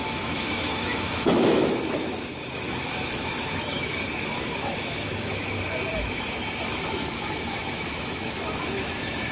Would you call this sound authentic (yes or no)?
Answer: no